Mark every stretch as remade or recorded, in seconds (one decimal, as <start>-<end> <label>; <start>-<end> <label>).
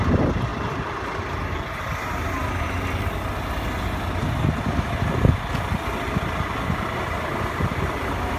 0.0-8.4 recorded